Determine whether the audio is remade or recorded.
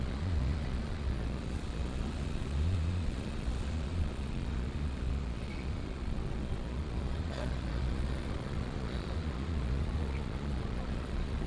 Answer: remade